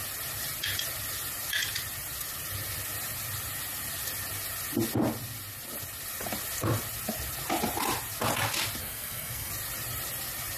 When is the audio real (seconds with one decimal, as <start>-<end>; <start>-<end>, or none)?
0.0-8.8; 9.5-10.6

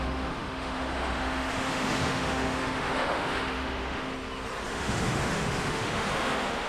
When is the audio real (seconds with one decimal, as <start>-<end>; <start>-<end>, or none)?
4.1-4.7

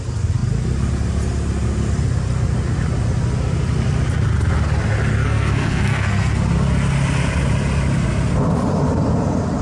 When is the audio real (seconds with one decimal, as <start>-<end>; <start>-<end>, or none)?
0.0-5.1; 6.3-9.6

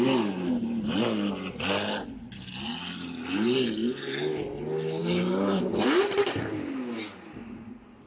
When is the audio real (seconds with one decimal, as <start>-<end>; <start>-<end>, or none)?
0.0-5.0; 5.6-8.1